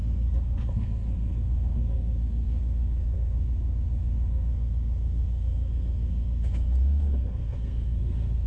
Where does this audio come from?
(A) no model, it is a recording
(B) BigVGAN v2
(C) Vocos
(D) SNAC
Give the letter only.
D